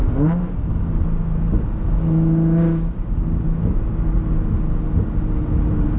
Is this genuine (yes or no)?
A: yes